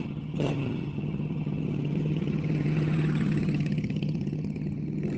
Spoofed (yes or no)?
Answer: yes